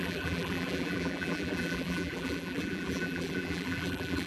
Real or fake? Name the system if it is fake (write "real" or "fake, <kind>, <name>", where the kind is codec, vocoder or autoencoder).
fake, vocoder, BigVGAN v2